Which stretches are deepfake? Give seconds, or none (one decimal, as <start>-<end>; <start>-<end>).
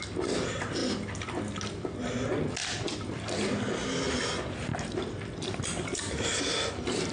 2.6-3.4; 4.7-6.4